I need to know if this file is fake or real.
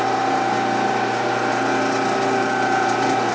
real